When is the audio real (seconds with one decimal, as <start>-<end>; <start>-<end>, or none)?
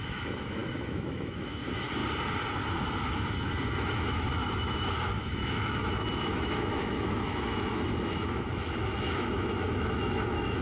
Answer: 2.0-3.7